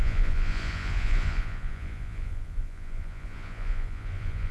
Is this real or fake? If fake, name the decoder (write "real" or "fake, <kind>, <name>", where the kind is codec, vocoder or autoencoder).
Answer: fake, vocoder, Vocos